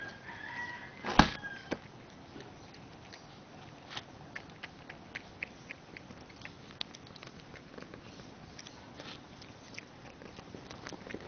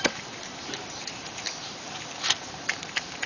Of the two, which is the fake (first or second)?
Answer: second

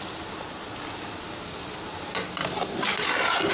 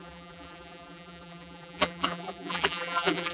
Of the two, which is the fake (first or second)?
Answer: second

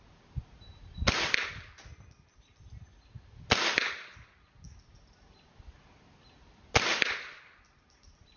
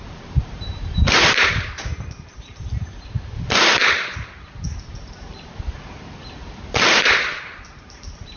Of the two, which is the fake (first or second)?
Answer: second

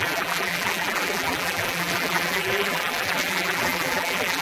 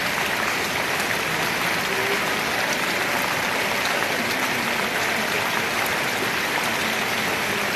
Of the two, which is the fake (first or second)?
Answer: first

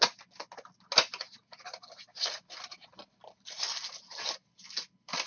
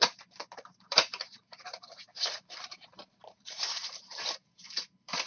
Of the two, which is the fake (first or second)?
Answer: second